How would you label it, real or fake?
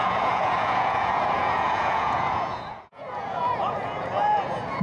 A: fake